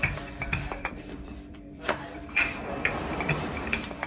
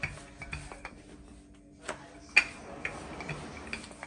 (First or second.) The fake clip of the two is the first